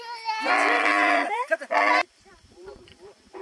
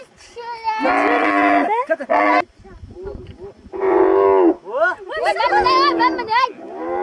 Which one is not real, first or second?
first